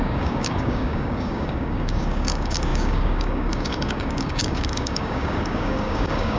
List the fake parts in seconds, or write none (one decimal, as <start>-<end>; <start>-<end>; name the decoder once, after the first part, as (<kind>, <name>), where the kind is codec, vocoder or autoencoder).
0.0-6.4 (codec, DAC)